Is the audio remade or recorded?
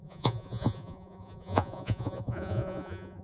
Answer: remade